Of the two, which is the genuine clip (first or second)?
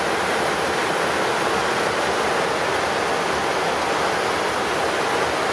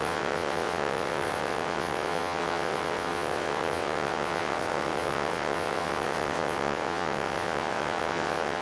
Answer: first